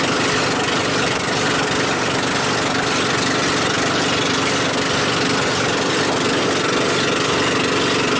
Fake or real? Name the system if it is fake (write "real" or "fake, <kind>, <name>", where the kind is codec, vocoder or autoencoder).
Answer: real